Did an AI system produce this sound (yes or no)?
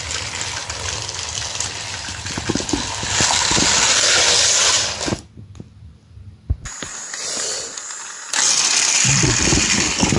no